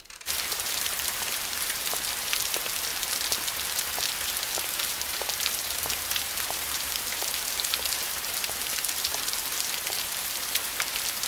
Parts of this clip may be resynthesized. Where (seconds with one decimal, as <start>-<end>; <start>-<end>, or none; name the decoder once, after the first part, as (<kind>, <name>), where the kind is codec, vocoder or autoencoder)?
0.0-2.9 (vocoder, BigVGAN v2); 3.7-11.3

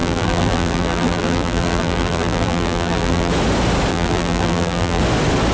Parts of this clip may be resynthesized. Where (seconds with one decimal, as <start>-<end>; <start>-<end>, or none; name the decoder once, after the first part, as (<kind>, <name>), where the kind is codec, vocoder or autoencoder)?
0.0-3.3 (vocoder, BigVGAN v2); 3.9-5.0

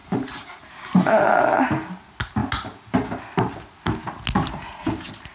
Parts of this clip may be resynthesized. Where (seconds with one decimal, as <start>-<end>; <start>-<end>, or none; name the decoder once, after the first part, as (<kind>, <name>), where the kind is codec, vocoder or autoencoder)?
0.0-0.7 (vocoder, BigVGAN v2)

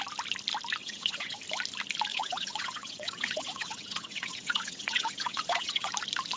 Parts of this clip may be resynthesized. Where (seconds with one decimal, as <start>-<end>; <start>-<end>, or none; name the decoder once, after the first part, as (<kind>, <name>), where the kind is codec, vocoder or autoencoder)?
0.8-1.4 (vocoder, WaveNeXt); 2.1-5.9

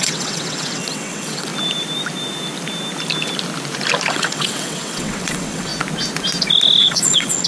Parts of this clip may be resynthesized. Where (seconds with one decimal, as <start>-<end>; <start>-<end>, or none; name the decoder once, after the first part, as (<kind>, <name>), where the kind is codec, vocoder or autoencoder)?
0.0-1.5 (vocoder, WaveNeXt); 4.1-5.7; 6.8-7.5

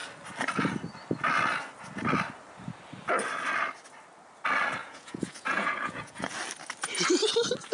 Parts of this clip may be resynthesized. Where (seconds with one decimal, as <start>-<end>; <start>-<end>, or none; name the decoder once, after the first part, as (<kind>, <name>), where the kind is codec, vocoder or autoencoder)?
4.8-6.3 (vocoder, Vocos)